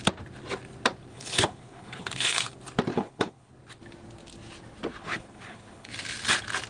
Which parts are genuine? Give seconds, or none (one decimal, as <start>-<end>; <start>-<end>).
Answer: 0.0-1.1; 2.5-2.9; 3.5-5.0; 5.9-6.7